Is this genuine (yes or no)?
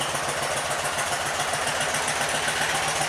yes